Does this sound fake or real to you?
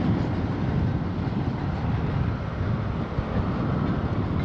real